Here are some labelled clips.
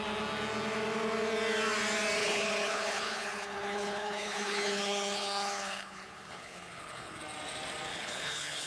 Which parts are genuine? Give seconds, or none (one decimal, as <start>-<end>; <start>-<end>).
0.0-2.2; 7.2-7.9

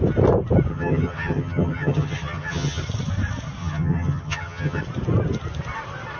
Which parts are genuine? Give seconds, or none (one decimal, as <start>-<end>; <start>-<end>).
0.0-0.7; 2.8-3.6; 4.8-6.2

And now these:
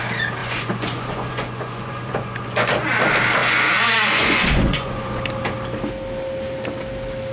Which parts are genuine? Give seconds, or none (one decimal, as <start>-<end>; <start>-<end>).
0.0-0.4; 2.7-3.4; 5.2-7.3

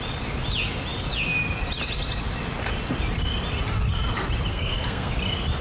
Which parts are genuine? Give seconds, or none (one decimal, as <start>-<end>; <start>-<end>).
0.0-4.5; 5.1-5.6

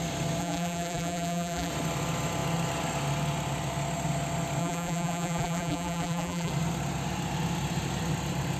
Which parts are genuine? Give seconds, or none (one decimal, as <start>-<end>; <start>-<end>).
0.0-0.4; 1.7-4.6; 6.5-8.6